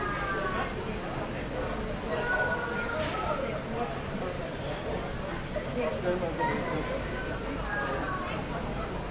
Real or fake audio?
real